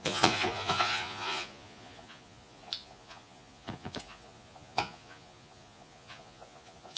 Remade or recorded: remade